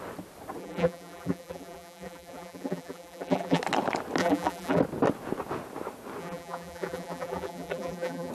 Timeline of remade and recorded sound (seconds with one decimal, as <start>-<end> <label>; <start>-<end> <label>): 0.0-0.6 recorded; 0.6-3.6 remade; 3.6-4.2 recorded; 4.2-4.8 remade; 4.8-6.2 recorded; 6.2-8.3 remade